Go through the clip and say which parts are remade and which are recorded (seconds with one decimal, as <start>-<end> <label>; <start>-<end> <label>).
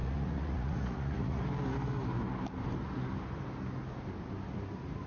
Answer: 0.0-1.4 remade; 1.4-5.1 recorded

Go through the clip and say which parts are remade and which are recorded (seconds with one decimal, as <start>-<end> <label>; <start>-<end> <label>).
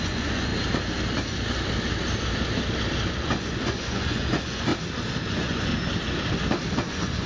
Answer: 0.0-0.5 remade; 0.5-3.1 recorded; 3.1-4.7 remade; 4.7-5.3 recorded; 5.3-5.7 remade; 5.7-6.7 recorded; 6.7-7.3 remade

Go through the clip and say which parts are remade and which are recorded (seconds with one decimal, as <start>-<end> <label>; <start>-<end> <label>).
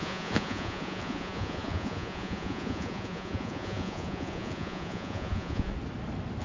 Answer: 0.0-5.7 remade; 5.7-6.4 recorded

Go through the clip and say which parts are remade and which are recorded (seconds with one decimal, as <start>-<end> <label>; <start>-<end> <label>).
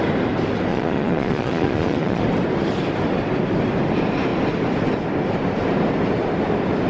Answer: 0.0-0.7 recorded; 0.7-2.2 remade; 2.2-6.9 recorded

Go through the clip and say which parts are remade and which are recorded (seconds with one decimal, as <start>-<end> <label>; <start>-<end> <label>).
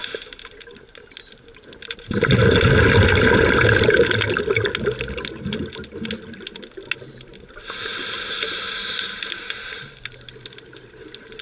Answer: 0.0-11.4 recorded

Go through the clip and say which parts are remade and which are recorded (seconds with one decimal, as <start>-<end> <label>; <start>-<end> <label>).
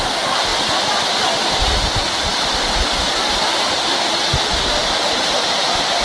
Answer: 0.0-6.0 recorded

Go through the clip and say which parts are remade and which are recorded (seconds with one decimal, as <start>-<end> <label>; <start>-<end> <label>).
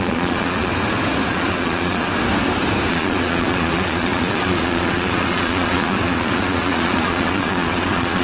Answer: 0.0-0.7 remade; 0.7-1.3 recorded; 1.3-2.1 remade; 2.1-2.9 recorded; 2.9-8.2 remade